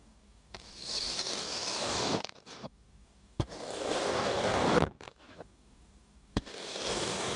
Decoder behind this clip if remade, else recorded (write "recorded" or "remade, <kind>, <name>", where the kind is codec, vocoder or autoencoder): remade, codec, DAC